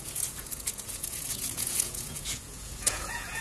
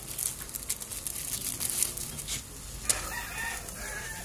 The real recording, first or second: second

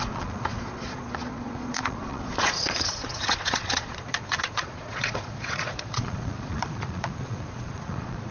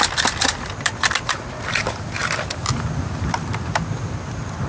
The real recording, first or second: second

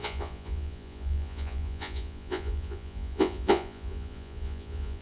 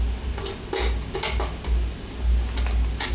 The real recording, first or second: second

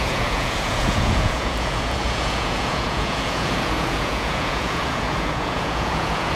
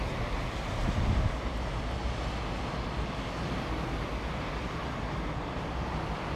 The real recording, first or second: second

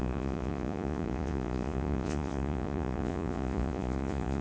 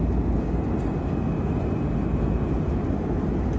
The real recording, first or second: second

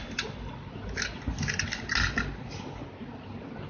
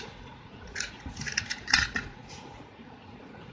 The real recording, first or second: first